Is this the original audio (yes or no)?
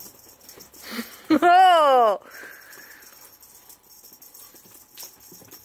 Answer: yes